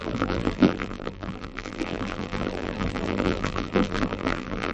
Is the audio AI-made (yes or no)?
yes